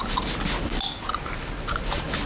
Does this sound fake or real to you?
real